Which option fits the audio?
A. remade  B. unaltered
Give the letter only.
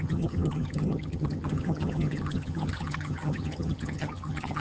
A